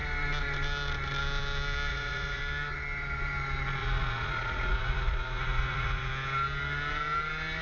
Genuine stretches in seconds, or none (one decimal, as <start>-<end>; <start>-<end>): 0.0-1.9; 2.4-3.8; 6.1-7.6